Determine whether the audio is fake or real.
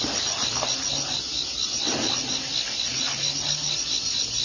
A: real